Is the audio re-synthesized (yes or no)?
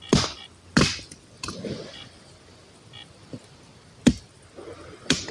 no